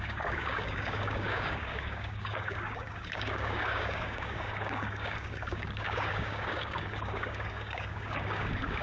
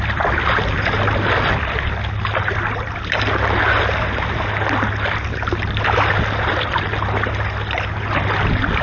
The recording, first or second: second